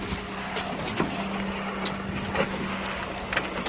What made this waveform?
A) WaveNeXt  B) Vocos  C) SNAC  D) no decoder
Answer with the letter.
D